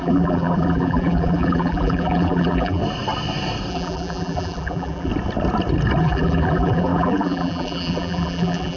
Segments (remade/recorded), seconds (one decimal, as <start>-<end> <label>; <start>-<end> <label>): 0.0-2.8 remade; 2.8-3.7 recorded; 3.7-5.1 remade; 5.1-6.0 recorded; 6.0-8.8 remade